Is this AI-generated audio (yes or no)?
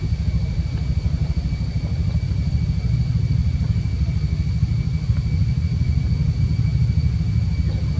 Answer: no